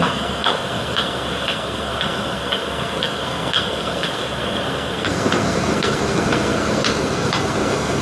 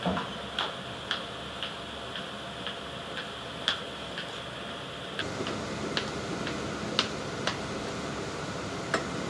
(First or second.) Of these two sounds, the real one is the second